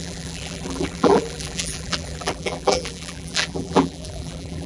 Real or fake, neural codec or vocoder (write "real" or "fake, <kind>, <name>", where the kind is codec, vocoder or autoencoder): fake, vocoder, BigVGAN v2